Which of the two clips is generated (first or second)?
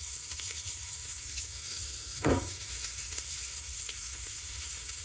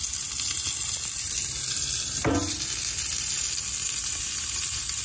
first